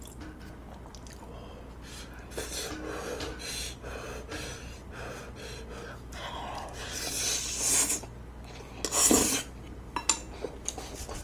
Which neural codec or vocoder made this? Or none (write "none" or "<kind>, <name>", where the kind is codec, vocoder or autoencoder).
none